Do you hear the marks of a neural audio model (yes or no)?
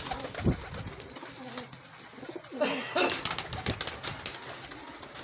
no